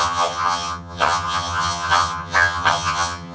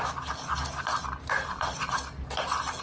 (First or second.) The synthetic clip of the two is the first